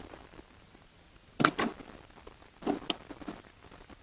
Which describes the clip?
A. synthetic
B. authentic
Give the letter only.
B